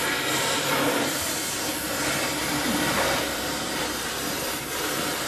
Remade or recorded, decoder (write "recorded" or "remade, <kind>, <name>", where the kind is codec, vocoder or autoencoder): remade, vocoder, BigVGAN v2